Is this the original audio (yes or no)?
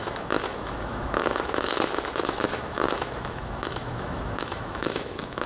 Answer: no